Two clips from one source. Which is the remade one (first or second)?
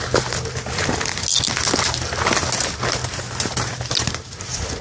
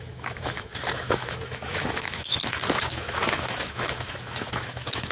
second